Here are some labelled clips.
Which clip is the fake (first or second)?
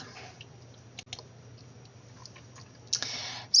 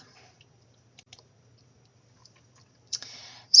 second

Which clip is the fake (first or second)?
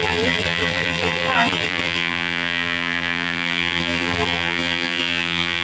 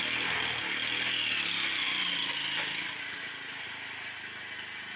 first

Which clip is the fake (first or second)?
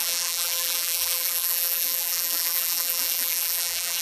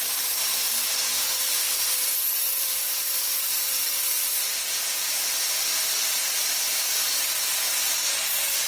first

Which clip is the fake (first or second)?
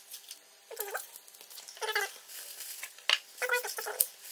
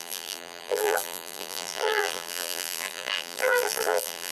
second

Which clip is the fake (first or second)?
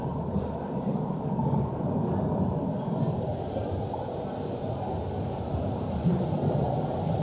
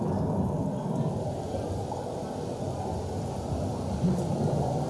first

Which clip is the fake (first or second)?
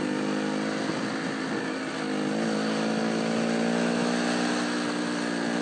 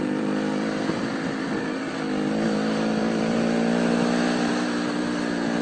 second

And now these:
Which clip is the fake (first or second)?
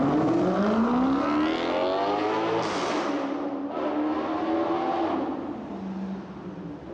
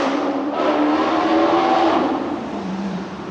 second